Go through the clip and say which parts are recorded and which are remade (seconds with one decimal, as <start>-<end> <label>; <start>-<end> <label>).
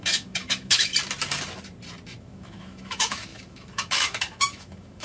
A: 0.0-0.9 remade; 0.9-2.2 recorded; 2.2-5.0 remade